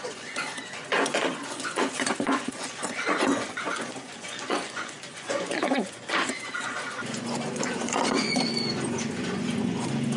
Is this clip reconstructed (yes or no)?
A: yes